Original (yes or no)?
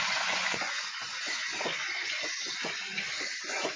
no